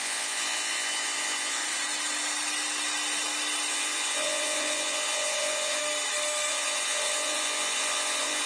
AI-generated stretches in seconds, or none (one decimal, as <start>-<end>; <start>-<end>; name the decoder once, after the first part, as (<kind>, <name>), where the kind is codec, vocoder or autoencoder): 0.0-1.6 (vocoder, Vocos); 3.7-5.8; 6.5-8.5